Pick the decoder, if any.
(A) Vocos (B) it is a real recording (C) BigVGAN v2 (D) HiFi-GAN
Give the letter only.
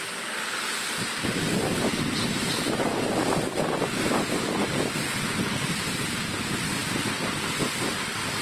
B